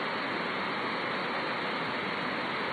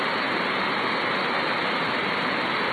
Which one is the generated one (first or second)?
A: second